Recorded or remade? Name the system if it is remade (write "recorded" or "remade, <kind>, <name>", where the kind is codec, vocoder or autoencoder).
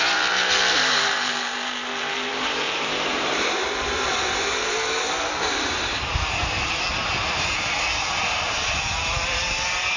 remade, vocoder, BigVGAN v2